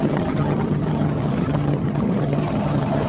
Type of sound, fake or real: fake